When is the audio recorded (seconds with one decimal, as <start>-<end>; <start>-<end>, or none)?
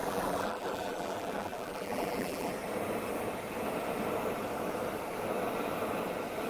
2.5-6.5